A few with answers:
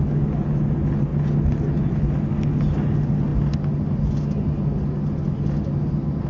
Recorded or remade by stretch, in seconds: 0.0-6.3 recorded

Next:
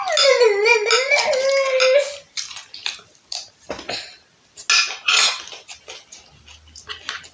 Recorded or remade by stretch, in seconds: 0.0-7.3 recorded

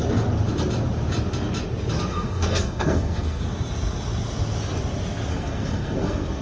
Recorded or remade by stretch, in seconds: 0.0-2.1 recorded; 2.1-3.4 remade; 3.4-5.3 recorded; 5.3-6.4 remade

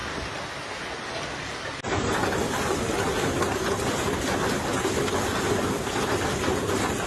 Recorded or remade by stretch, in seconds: 0.0-7.1 recorded